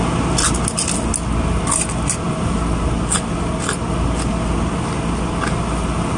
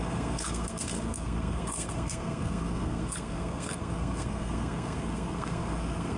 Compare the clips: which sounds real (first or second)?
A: first